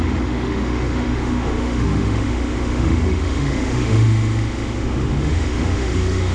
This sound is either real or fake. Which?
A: fake